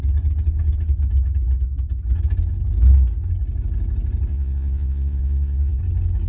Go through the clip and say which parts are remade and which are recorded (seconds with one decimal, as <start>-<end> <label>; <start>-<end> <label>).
0.0-4.3 recorded; 4.3-5.8 remade; 5.8-6.3 recorded